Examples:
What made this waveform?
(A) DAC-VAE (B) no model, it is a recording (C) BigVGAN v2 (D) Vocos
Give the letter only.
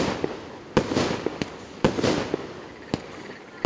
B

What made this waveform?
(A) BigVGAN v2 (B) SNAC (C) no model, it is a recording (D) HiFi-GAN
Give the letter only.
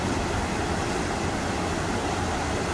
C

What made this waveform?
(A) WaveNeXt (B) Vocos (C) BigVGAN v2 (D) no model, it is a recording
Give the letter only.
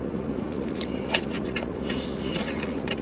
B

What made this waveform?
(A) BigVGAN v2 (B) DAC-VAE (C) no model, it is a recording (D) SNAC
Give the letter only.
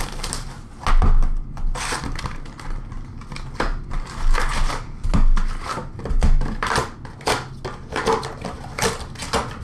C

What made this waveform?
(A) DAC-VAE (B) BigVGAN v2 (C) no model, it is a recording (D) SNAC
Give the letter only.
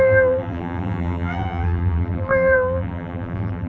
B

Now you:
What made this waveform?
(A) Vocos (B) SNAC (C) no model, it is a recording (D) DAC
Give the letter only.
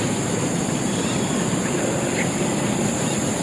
C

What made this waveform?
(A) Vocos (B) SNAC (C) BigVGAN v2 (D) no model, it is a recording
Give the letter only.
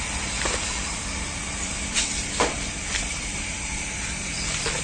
C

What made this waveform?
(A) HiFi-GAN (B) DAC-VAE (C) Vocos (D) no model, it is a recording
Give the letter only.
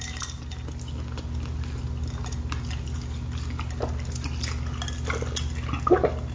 D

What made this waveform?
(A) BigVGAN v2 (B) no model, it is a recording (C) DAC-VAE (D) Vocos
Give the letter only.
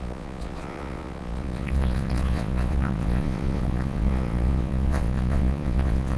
D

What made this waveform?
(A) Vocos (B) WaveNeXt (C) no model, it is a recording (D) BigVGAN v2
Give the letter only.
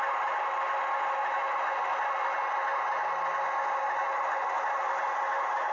C